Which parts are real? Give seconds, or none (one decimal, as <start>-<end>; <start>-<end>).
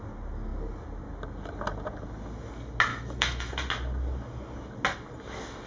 0.0-2.9; 3.5-5.7